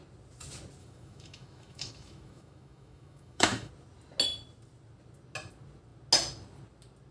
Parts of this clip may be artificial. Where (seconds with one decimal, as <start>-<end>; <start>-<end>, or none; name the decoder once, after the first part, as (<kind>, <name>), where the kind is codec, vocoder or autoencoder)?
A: 0.8-3.7 (autoencoder, DAC-VAE)